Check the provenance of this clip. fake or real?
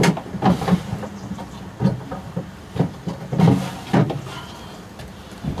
real